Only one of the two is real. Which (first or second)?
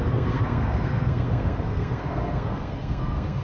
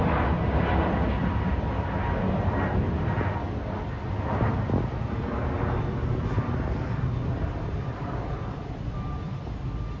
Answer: second